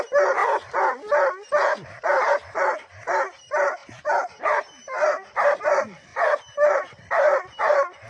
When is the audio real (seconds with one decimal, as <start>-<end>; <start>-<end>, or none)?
0.4-2.3; 3.8-4.4